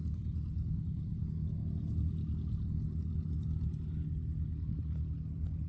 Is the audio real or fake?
real